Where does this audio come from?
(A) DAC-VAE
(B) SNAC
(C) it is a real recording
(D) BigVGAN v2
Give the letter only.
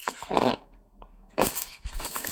B